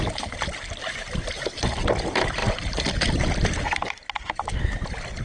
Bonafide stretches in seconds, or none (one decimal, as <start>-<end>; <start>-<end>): 0.0-0.8; 1.4-5.2